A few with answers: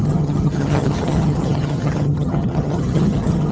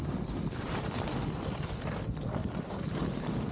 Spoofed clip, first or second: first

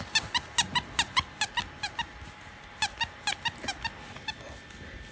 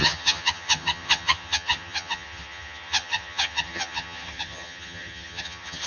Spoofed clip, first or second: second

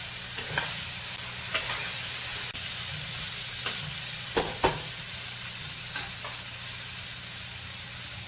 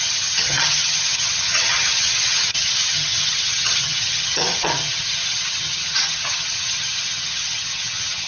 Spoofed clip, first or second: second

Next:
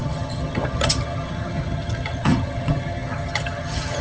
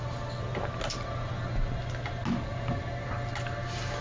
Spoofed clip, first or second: first